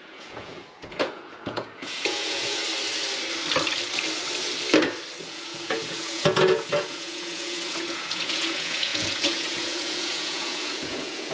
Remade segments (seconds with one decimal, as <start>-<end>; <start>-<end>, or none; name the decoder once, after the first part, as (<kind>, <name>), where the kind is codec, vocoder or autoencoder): 0.0-2.6 (vocoder, Vocos); 5.2-11.3